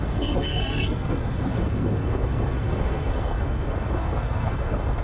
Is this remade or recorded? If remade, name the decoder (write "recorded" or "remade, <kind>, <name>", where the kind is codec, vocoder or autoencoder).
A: remade, codec, SNAC